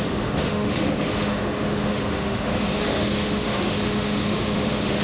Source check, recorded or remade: remade